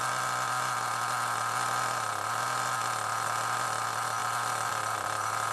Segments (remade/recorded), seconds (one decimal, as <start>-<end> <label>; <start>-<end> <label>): 0.0-5.5 recorded